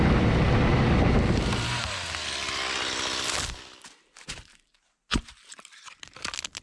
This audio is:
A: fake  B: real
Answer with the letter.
B